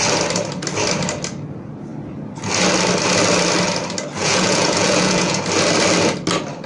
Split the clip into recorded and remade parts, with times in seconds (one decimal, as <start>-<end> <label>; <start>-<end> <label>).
0.0-4.2 recorded; 4.2-5.4 remade; 5.4-6.7 recorded